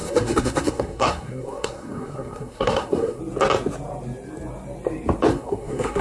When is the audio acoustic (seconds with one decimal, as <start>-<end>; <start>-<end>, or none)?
3.2-5.3